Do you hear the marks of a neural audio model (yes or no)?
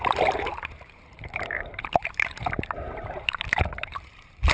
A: yes